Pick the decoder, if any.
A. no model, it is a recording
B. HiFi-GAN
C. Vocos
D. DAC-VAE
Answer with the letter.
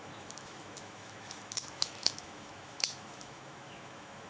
D